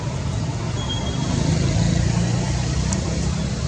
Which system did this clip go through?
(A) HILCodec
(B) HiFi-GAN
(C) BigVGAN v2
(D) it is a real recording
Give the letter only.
D